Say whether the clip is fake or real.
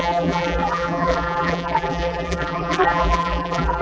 fake